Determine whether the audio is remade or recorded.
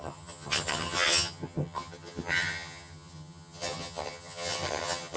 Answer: remade